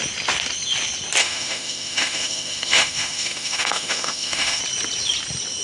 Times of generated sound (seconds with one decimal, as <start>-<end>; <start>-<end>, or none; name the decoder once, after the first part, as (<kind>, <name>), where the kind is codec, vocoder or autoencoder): 1.2-4.6 (autoencoder, DAC-VAE)